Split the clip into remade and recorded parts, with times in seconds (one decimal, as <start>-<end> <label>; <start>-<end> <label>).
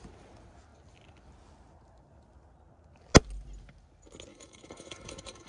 0.0-4.3 recorded; 4.3-5.5 remade